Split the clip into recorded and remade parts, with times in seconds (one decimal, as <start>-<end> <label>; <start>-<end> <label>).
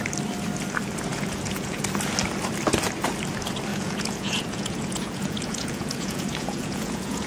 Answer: 0.0-1.1 recorded; 1.1-1.8 remade; 1.8-3.7 recorded; 3.7-7.3 remade